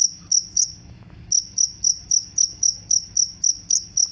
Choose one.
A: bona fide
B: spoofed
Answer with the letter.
B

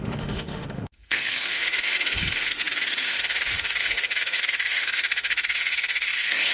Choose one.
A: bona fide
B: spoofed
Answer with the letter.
B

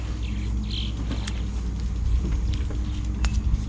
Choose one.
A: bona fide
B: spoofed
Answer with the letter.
A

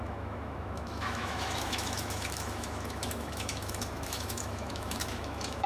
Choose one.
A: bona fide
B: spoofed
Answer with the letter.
B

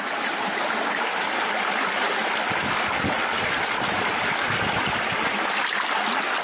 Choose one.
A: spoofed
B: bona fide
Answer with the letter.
B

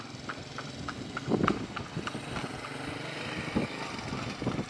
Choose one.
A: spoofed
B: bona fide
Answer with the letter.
B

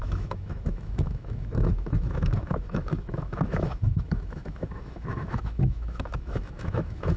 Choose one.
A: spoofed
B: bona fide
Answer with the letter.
A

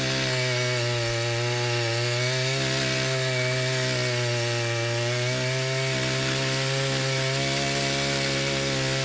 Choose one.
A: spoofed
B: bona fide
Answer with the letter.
B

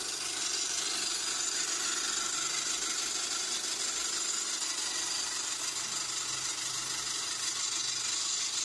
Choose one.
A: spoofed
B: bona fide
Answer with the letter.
B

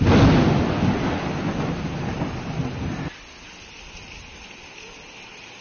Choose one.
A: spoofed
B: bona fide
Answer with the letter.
B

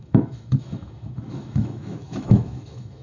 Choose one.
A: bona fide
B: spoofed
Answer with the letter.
B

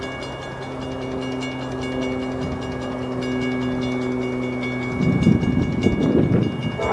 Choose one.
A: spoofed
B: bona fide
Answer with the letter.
B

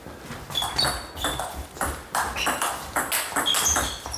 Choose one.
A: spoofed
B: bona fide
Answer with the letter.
B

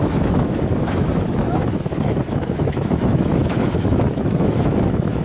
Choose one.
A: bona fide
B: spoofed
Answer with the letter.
B